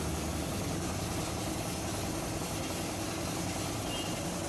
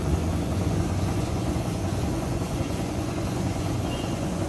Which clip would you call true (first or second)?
first